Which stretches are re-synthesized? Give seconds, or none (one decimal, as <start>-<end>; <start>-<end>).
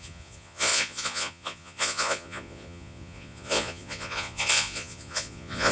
0.0-5.7